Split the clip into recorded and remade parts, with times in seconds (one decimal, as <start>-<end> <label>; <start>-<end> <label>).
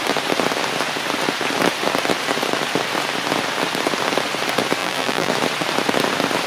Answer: 0.0-4.8 recorded; 4.8-5.3 remade; 5.3-6.5 recorded